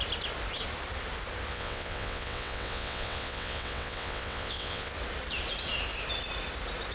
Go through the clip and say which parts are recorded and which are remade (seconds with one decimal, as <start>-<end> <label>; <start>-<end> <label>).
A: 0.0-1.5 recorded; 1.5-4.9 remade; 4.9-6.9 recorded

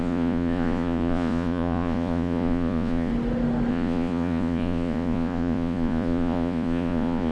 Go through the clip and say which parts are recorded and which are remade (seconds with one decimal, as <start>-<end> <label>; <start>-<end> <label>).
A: 0.0-3.1 remade; 3.1-3.7 recorded; 3.7-7.3 remade

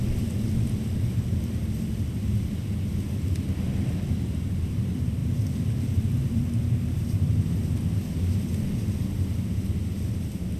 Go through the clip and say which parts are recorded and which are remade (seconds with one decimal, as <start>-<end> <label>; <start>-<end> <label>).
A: 0.0-10.6 recorded

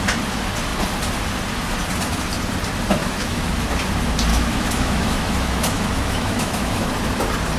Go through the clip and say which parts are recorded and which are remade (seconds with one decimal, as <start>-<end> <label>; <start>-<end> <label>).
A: 0.0-3.0 recorded; 3.0-3.7 remade; 3.7-4.3 recorded; 4.3-6.9 remade; 6.9-7.6 recorded

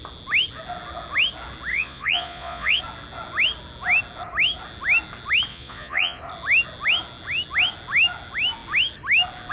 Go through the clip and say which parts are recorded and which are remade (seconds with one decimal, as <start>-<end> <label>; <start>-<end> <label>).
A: 0.0-1.7 recorded; 1.7-2.8 remade; 2.8-5.5 recorded; 5.5-6.2 remade; 6.2-9.5 recorded